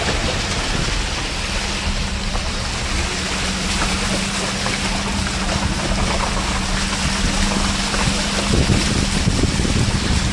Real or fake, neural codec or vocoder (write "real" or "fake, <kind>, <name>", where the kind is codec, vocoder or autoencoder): real